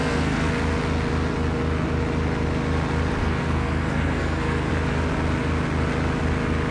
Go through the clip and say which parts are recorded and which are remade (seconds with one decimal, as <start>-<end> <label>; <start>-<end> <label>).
0.0-0.5 remade; 0.5-3.2 recorded; 3.2-4.7 remade; 4.7-6.7 recorded